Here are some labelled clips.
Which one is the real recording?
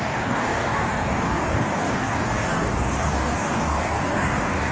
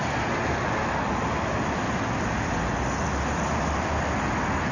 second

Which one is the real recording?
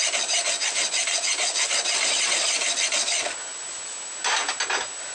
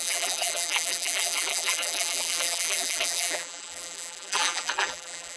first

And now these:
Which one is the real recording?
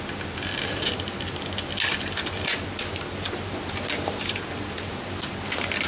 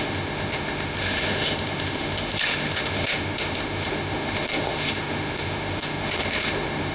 first